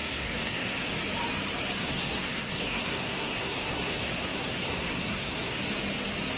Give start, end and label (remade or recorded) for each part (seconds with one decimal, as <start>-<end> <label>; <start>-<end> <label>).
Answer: 0.0-0.9 remade; 0.9-1.8 recorded; 1.8-5.6 remade; 5.6-6.4 recorded